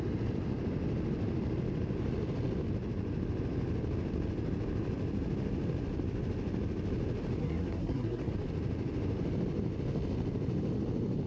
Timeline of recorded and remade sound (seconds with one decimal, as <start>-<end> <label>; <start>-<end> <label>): 0.0-7.4 recorded; 7.4-8.3 remade; 8.3-11.3 recorded